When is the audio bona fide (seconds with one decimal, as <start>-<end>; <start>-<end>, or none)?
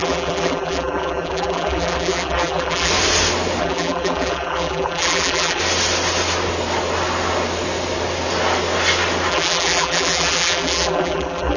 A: 2.9-3.6; 5.6-9.3